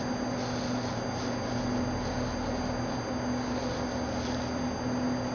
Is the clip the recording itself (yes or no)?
yes